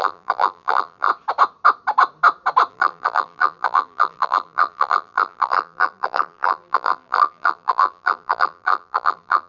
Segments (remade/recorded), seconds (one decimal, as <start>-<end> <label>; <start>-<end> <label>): 0.0-1.1 remade; 1.1-2.7 recorded; 2.7-9.5 remade